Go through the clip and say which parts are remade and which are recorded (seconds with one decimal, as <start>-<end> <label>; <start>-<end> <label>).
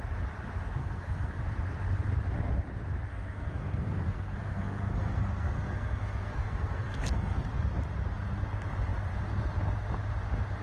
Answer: 0.0-0.8 recorded; 0.8-1.4 remade; 1.4-3.1 recorded; 3.1-7.5 remade; 7.5-10.6 recorded